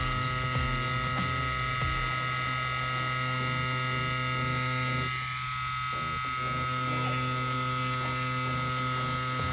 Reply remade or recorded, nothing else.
recorded